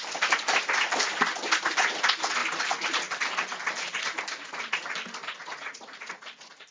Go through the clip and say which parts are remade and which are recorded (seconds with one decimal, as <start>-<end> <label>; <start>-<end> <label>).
0.0-5.4 recorded; 5.4-6.0 remade; 6.0-6.7 recorded